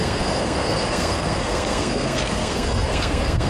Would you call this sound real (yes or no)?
no